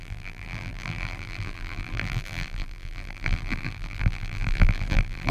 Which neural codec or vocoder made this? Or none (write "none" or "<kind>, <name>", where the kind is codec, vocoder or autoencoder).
vocoder, BigVGAN v2